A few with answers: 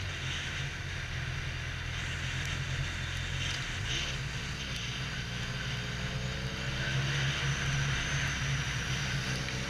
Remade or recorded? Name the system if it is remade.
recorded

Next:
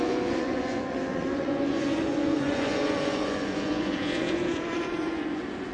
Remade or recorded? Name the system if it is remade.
remade, vocoder, Vocos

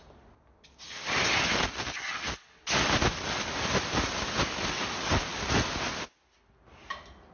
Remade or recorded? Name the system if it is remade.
recorded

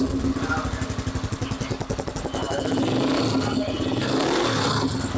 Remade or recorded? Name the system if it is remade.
recorded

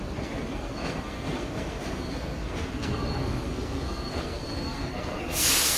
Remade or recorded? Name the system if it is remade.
remade, codec, SNAC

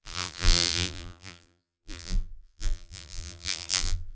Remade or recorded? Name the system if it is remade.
remade, vocoder, BigVGAN v2